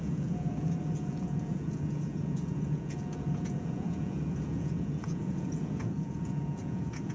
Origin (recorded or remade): remade